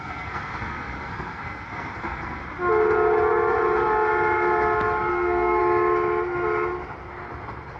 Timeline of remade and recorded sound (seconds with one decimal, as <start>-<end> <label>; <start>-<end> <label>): 0.0-2.4 remade; 2.4-5.1 recorded; 5.1-5.6 remade; 5.6-7.8 recorded